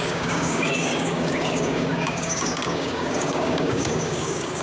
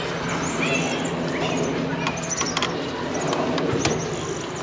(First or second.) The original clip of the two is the second